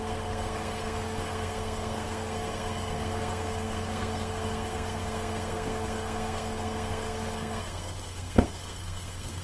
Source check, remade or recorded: remade